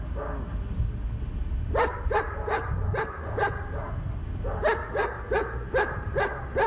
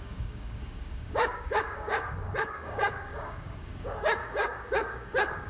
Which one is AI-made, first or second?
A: second